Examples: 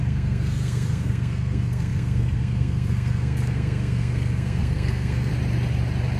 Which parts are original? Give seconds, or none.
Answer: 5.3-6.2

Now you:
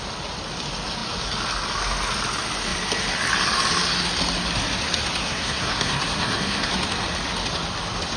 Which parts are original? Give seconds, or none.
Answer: 0.0-5.2; 6.7-8.2

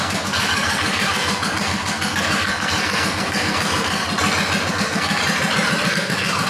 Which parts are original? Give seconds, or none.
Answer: 4.0-4.7; 5.2-5.9

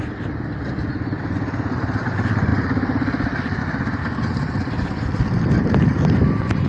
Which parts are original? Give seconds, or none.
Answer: 0.0-6.7

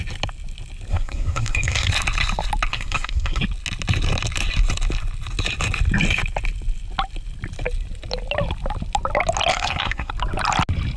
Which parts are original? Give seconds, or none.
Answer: 0.0-0.9; 1.9-2.7; 3.4-9.5; 10.1-11.0

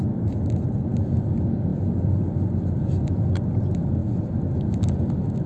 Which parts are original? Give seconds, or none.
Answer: 0.0-5.5